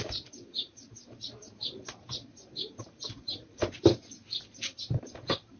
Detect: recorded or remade remade